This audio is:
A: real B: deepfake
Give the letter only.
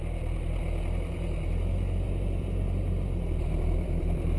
B